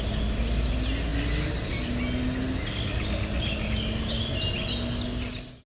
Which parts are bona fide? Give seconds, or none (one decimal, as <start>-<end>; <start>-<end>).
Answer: 0.0-5.7